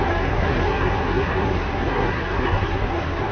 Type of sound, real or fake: fake